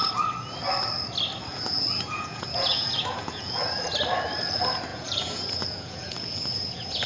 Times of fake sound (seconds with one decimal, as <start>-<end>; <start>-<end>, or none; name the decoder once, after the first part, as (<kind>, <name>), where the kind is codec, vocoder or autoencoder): 1.5-3.6 (vocoder, Vocos); 4.9-7.1